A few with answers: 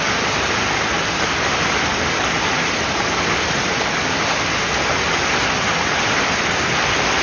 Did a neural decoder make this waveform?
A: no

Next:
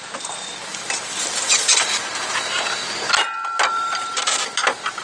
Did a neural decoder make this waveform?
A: no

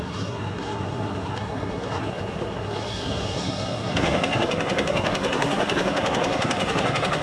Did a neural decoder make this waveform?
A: yes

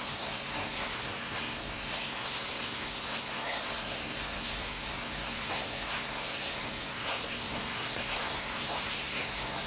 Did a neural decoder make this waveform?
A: yes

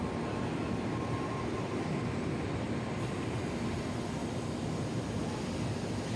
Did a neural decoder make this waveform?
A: no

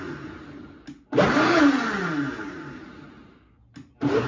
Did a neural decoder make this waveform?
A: no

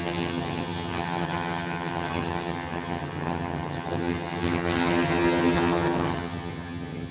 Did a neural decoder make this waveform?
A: yes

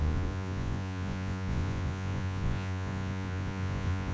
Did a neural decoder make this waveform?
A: yes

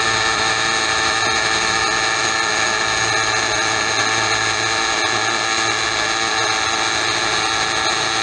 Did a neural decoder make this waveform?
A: no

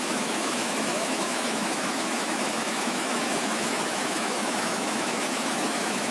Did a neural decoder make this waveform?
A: yes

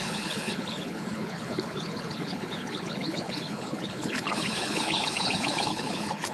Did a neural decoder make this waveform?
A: yes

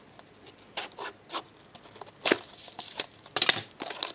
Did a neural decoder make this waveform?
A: no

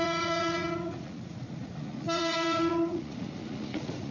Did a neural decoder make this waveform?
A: yes